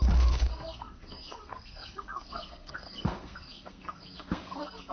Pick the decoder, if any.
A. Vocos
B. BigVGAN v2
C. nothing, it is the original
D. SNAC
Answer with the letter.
D